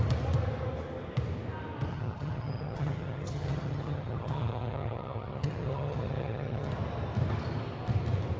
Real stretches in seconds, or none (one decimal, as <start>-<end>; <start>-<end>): 0.0-1.9; 6.7-8.4